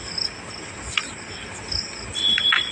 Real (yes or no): yes